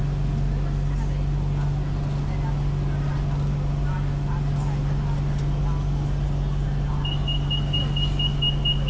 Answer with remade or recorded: recorded